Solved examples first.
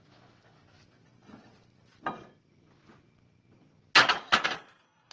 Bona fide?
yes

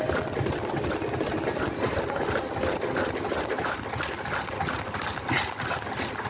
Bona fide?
yes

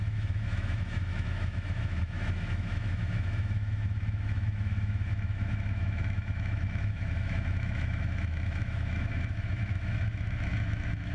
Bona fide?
no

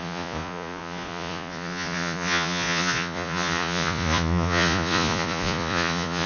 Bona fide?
no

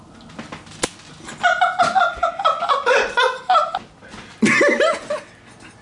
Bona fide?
yes